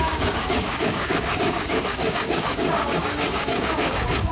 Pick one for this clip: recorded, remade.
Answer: remade